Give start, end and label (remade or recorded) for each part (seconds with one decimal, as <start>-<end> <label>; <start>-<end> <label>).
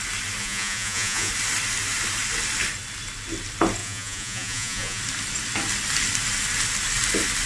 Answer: 0.0-0.4 recorded; 0.4-1.3 remade; 1.3-3.8 recorded; 3.8-5.0 remade; 5.0-7.5 recorded